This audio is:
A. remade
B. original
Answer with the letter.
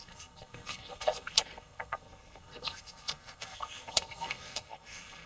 A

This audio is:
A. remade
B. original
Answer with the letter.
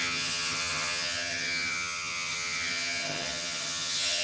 A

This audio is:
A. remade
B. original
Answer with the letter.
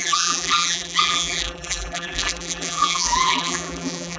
A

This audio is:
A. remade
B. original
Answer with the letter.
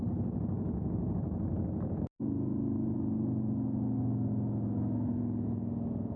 B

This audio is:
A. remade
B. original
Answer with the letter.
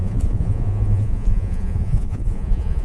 A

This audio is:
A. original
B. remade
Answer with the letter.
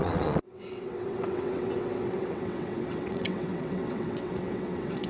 B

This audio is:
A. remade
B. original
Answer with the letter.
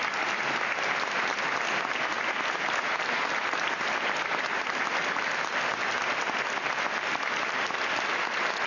B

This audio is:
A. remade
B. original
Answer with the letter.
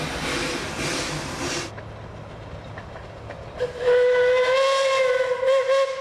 B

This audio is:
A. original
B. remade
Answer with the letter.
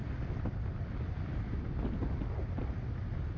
A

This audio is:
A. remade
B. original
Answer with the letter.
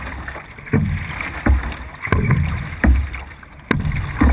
B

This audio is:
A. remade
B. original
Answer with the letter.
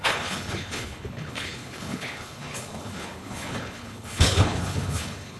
A